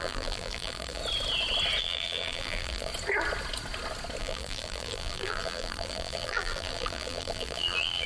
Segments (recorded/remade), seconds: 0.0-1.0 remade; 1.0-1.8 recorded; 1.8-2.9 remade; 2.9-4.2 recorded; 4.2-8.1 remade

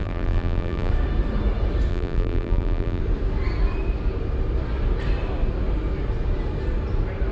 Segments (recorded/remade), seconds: 0.0-0.9 remade; 0.9-1.9 recorded; 1.9-3.0 remade; 3.0-7.3 recorded

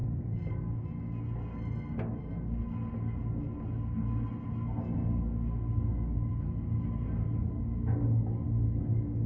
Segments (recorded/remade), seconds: 0.0-0.5 remade; 0.5-9.3 recorded

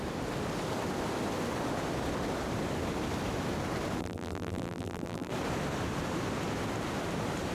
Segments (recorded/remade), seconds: 0.0-4.0 recorded; 4.0-5.3 remade; 5.3-7.5 recorded

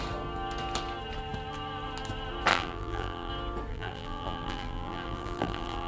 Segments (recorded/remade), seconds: 0.0-2.5 recorded; 2.5-3.3 remade; 3.3-3.7 recorded; 3.7-5.9 remade

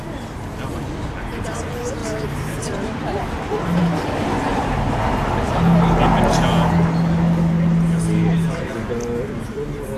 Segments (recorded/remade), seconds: 0.0-2.0 recorded; 2.0-3.8 remade; 3.8-4.5 recorded; 4.5-5.6 remade; 5.6-10.0 recorded

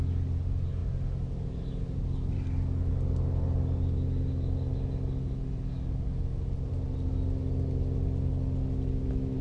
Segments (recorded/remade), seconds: 0.0-9.4 recorded